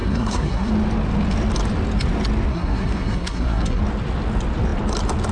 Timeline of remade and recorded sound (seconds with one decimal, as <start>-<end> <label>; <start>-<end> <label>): 0.0-0.7 remade; 0.7-2.5 recorded; 2.5-3.8 remade; 3.8-5.3 recorded